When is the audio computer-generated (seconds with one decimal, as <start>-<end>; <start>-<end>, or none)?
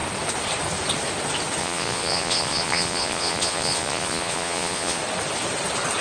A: 1.6-5.0